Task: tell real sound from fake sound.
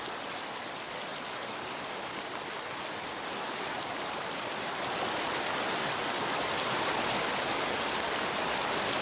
real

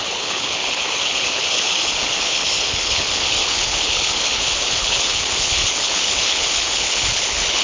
fake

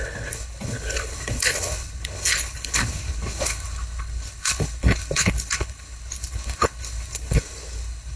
fake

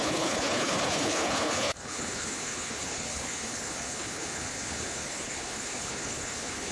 fake